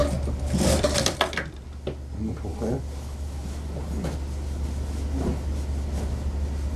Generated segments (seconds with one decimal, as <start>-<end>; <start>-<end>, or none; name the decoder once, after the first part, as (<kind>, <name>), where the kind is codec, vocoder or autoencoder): none